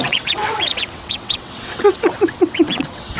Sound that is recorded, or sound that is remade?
remade